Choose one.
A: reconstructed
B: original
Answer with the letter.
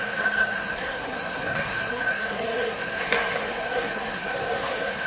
A